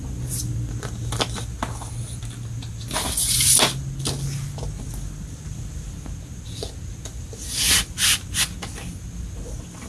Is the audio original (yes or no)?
yes